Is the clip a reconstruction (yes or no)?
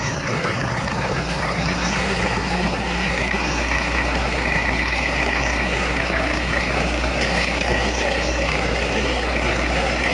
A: yes